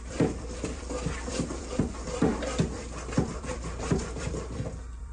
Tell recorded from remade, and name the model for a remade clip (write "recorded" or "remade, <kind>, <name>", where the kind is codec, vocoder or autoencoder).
remade, vocoder, BigVGAN v2